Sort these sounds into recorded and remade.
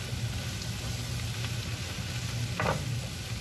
recorded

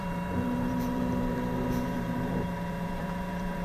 remade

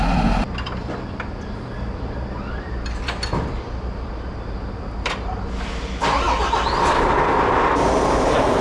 remade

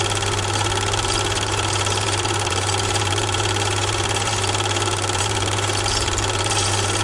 remade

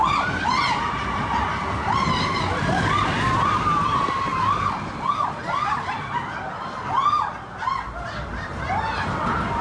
recorded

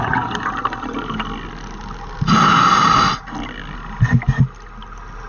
recorded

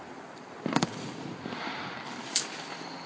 remade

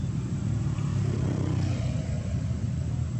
remade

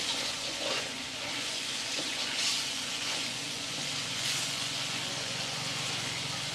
remade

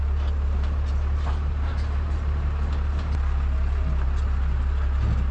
recorded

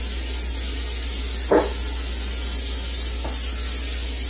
recorded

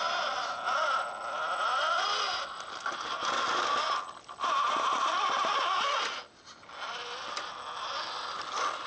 recorded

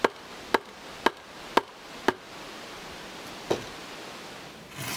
recorded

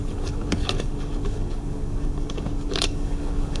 remade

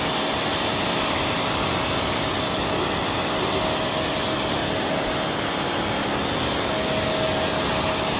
recorded